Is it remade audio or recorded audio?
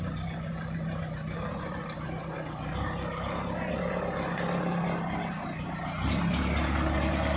recorded